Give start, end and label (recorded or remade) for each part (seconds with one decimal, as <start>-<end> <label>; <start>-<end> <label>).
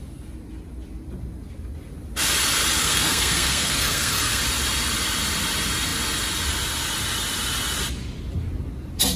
0.0-2.8 recorded; 2.8-4.4 remade; 4.4-9.2 recorded